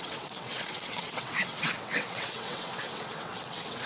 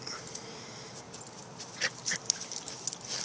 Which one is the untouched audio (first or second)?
second